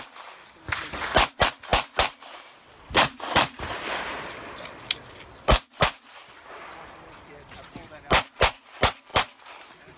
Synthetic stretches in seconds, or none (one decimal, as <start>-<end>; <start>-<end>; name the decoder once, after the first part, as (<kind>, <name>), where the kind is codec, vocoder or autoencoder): none